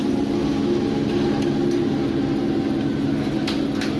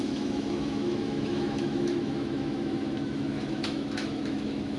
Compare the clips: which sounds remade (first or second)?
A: second